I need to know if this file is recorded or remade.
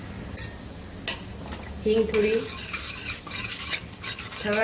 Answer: recorded